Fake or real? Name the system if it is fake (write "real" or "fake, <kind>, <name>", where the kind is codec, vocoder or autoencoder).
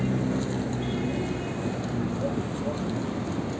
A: real